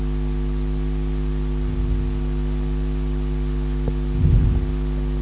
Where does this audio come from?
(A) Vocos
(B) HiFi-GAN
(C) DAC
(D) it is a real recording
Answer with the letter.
D